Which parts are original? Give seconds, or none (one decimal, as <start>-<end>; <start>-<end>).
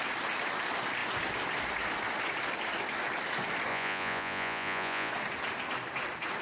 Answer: 0.0-3.7; 5.1-6.4